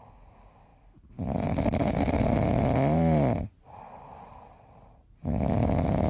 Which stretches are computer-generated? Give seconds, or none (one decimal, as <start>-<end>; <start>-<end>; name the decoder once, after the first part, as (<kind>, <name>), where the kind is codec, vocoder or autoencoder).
none